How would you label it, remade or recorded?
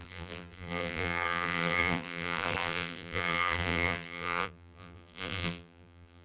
remade